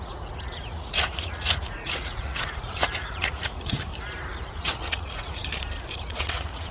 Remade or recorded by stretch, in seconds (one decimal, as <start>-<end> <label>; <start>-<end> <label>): 0.0-3.9 remade; 3.9-4.5 recorded; 4.5-5.4 remade; 5.4-6.0 recorded; 6.0-6.7 remade